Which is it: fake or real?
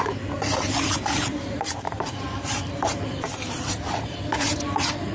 fake